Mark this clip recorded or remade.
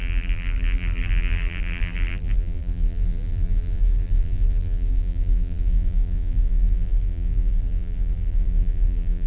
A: remade